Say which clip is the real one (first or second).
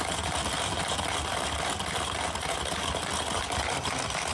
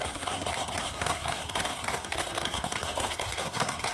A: first